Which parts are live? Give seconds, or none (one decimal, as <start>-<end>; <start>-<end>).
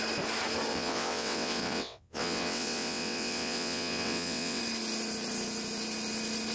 0.0-0.7; 4.6-6.5